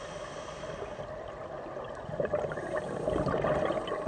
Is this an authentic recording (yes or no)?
yes